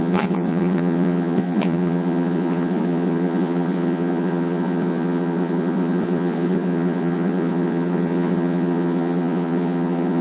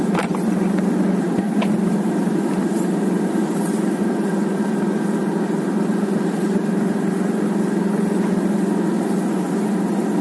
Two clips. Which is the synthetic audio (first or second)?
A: first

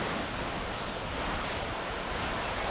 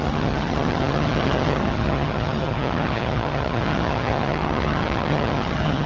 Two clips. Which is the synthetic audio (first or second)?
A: second